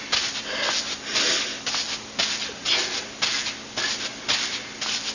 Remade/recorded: recorded